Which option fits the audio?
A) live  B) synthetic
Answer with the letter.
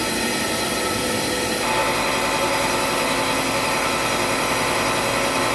A